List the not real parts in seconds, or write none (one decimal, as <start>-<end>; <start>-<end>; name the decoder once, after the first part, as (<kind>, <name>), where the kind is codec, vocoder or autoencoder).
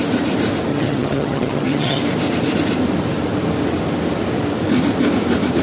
0.7-2.0 (vocoder, HiFi-GAN)